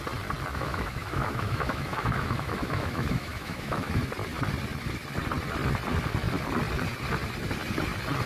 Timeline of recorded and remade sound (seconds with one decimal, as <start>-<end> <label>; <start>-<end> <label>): 0.0-0.5 recorded; 0.5-4.0 remade; 4.0-8.3 recorded